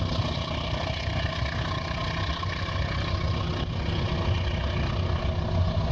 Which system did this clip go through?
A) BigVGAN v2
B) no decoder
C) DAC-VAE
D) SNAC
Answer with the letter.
B